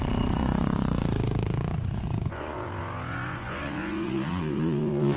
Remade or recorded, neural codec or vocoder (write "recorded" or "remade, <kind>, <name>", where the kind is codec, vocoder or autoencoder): remade, vocoder, Vocos